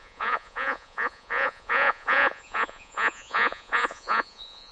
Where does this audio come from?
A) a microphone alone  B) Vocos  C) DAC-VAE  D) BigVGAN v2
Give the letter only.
B